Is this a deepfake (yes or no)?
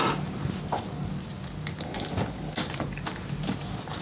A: no